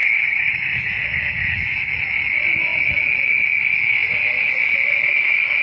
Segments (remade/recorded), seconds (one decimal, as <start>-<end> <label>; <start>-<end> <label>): 0.0-2.0 remade; 2.0-5.6 recorded